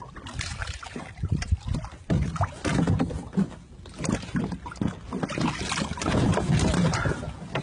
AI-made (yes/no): no